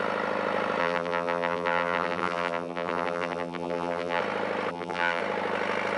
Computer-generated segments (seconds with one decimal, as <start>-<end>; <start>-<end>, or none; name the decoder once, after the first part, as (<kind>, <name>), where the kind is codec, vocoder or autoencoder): 0.8-4.2 (vocoder, BigVGAN v2); 4.7-5.2